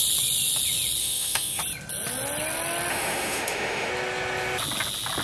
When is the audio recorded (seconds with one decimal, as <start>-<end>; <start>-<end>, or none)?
0.0-1.0; 1.6-2.9; 3.9-5.2